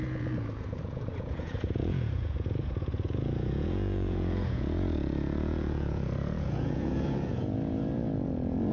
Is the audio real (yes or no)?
no